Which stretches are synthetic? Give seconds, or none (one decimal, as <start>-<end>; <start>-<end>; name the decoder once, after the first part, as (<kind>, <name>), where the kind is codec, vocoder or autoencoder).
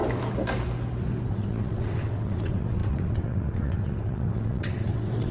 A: 1.3-5.3 (vocoder, WaveNeXt)